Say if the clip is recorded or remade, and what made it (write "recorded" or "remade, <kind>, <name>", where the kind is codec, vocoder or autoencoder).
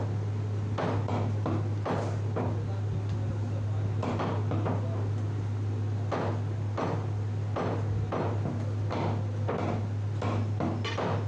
recorded